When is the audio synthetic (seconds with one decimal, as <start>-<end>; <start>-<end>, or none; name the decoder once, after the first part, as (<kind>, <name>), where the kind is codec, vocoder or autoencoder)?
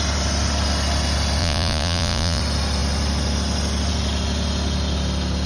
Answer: 1.4-2.4 (vocoder, Vocos)